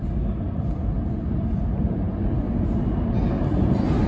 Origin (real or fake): real